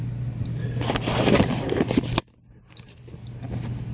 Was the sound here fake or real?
real